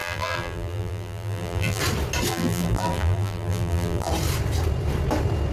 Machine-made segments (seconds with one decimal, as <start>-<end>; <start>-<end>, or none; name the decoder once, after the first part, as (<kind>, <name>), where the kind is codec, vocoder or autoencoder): 0.0-1.8 (vocoder, BigVGAN v2); 2.3-4.1